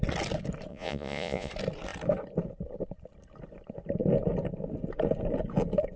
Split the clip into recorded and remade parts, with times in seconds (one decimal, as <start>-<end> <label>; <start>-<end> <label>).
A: 0.0-0.7 recorded; 0.7-1.5 remade; 1.5-6.0 recorded